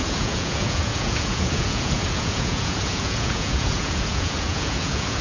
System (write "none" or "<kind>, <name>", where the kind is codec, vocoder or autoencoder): vocoder, Vocos